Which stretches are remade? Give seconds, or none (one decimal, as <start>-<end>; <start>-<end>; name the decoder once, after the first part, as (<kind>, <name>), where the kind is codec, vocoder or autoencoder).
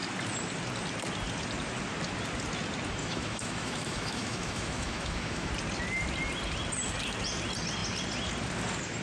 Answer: 3.0-5.5 (autoencoder, DAC-VAE)